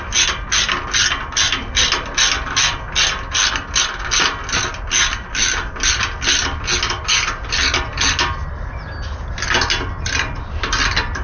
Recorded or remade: recorded